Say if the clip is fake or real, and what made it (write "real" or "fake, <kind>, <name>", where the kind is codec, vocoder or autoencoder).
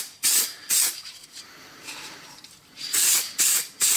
fake, vocoder, BigVGAN v2